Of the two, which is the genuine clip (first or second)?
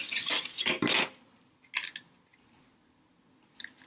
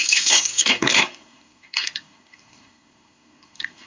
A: first